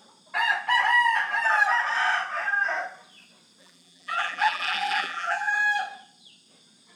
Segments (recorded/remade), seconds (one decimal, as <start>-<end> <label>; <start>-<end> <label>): 0.0-3.6 recorded; 3.6-5.5 remade; 5.5-7.0 recorded